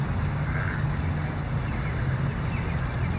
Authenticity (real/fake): real